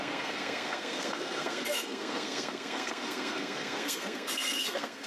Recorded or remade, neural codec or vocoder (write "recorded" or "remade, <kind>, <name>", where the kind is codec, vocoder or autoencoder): remade, codec, SNAC